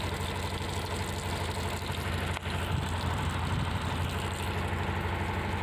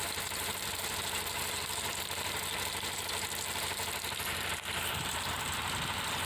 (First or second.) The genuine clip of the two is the first